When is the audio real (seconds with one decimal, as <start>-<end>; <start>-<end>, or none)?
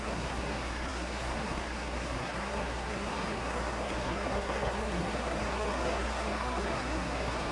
none